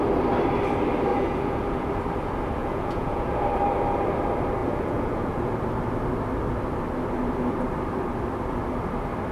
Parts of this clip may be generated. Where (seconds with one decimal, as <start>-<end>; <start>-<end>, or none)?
1.1-1.9; 2.6-3.4; 4.6-5.5